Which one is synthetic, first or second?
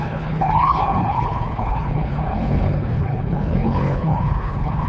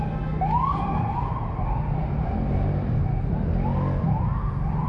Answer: first